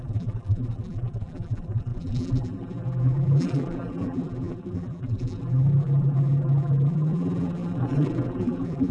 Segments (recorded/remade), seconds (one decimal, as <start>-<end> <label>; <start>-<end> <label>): 0.0-8.9 remade